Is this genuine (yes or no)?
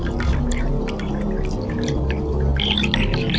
yes